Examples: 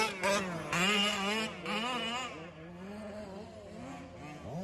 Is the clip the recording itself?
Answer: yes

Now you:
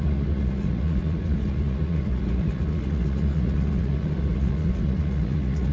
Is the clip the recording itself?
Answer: no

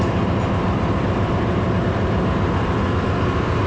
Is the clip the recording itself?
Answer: yes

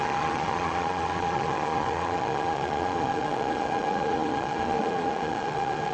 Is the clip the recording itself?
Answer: no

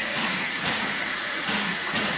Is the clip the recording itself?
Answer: no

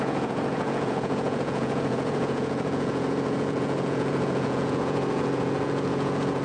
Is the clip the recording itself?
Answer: no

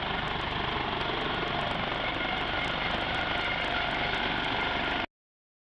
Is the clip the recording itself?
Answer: yes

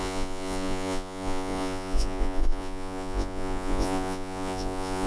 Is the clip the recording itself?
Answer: no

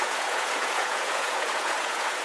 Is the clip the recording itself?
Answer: no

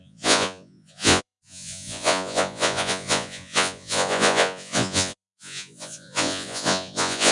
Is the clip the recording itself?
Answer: no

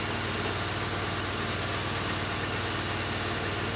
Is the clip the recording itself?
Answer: yes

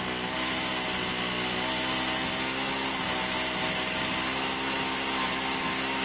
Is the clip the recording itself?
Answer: yes